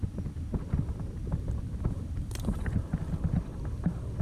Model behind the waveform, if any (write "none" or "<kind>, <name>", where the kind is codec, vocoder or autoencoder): none